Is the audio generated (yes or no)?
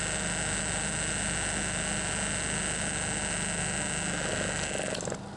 no